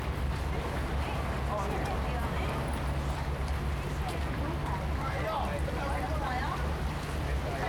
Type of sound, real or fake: real